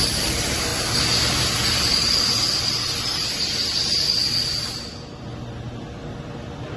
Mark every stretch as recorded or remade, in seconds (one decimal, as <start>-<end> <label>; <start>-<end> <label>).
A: 0.0-0.7 recorded; 0.7-4.6 remade; 4.6-5.3 recorded; 5.3-5.8 remade; 5.8-6.8 recorded